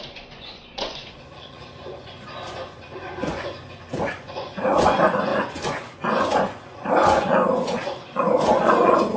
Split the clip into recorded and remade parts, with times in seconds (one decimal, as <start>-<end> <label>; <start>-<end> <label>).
0.0-9.2 remade